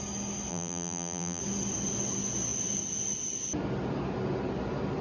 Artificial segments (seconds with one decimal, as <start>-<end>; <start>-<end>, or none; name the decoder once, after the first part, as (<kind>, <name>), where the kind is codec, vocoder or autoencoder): 0.5-1.4 (vocoder, BigVGAN v2)